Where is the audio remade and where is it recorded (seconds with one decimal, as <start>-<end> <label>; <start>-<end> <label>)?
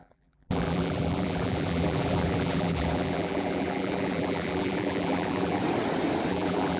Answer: 0.0-5.6 remade; 5.6-6.3 recorded; 6.3-6.8 remade